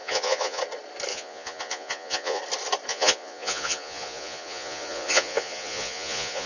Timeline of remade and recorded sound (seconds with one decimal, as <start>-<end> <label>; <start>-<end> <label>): 0.0-0.6 remade; 0.6-1.1 recorded; 1.1-2.4 remade; 2.4-2.9 recorded; 2.9-6.5 remade